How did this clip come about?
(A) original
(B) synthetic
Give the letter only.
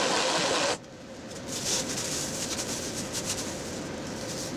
A